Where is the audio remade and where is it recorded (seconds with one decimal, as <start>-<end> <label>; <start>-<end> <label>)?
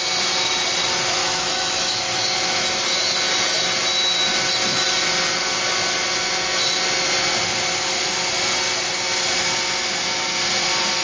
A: 0.0-1.2 recorded; 1.2-2.0 remade; 2.0-11.0 recorded